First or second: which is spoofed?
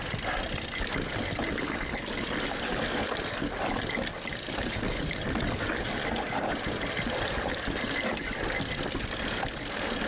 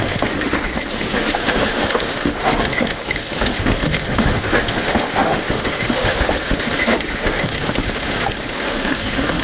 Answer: second